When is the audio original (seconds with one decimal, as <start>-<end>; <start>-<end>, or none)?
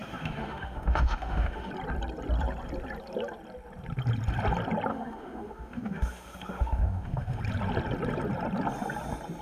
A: 1.7-4.9; 7.4-9.4